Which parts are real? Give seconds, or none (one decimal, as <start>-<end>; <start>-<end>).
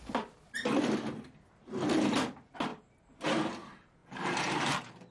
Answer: 0.0-4.0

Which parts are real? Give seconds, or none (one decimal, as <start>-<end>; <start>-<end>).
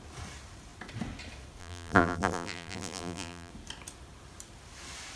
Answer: 0.0-1.6; 3.5-5.2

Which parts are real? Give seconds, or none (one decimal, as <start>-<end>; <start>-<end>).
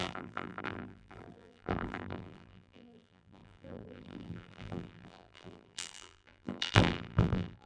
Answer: none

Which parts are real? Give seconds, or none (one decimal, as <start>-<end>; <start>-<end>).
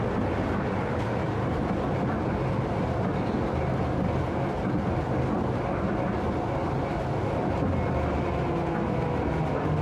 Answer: 2.3-6.6; 7.4-9.8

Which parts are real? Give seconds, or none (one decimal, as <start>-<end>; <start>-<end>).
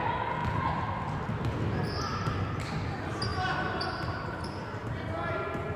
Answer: 0.0-3.3; 4.4-5.8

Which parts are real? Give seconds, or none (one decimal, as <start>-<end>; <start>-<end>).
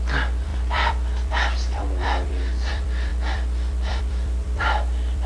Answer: none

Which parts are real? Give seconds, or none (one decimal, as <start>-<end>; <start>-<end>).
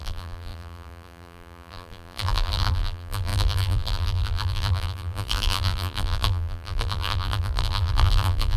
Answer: none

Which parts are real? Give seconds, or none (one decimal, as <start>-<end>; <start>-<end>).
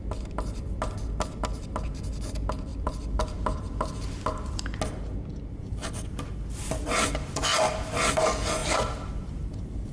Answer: 0.0-2.7; 4.6-8.6